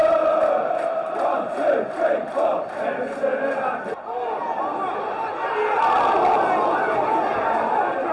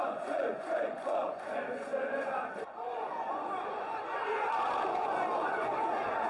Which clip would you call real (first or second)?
first